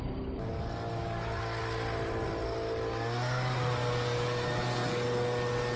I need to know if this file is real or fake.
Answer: real